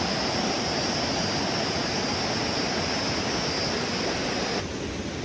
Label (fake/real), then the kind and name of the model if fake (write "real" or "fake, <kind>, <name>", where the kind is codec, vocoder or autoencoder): real